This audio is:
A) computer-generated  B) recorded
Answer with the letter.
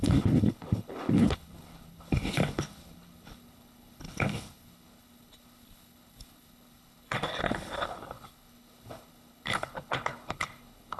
A